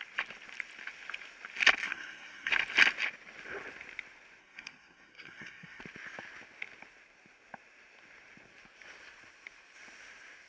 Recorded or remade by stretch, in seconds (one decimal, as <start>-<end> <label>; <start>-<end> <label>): 0.0-1.8 recorded; 1.8-2.5 remade; 2.5-4.4 recorded; 4.4-5.8 remade; 5.8-10.5 recorded

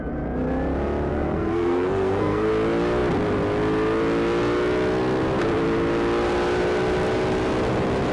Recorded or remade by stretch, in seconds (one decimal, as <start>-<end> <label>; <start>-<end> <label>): 0.0-1.1 recorded; 1.1-2.5 remade; 2.5-8.1 recorded